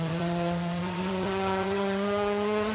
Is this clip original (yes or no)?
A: no